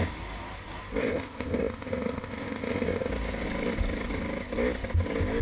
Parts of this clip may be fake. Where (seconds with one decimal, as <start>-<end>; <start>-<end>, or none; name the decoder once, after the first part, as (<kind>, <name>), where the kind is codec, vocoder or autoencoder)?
1.0-3.1 (codec, ZipCodec)

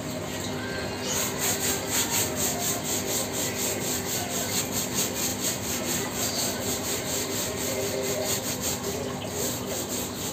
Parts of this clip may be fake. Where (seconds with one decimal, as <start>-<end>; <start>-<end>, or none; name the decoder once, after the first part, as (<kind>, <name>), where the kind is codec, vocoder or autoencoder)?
5.3-8.4 (vocoder, BigVGAN v2)

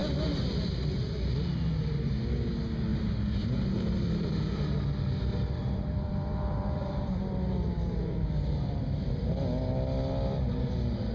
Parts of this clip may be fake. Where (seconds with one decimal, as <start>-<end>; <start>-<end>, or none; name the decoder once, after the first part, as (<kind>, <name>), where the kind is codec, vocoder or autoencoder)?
0.0-0.7 (vocoder, BigVGAN v2); 2.9-4.4; 5.3-9.1

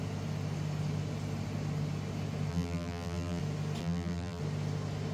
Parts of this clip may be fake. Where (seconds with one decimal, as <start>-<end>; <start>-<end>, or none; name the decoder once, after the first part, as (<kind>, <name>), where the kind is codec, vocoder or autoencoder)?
2.5-3.4 (vocoder, BigVGAN v2); 3.8-4.4

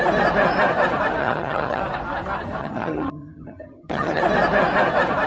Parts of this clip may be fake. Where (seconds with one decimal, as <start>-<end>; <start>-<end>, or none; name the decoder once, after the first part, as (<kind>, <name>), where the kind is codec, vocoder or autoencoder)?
1.2-1.8 (vocoder, HiFi-GAN); 2.6-4.2

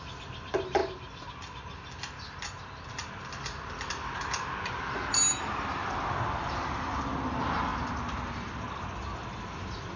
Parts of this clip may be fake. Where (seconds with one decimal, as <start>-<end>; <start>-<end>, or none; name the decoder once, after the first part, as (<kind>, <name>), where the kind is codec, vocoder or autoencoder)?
none

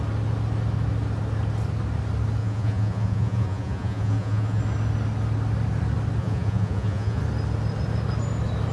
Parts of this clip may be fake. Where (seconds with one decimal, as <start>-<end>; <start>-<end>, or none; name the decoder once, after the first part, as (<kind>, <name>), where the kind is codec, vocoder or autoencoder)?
2.4-4.6 (vocoder, Vocos); 6.2-7.2

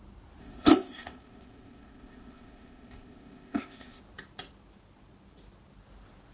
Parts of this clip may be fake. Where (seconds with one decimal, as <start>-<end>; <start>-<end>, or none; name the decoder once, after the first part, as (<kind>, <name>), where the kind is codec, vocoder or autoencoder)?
0.4-4.0 (codec, ZipCodec)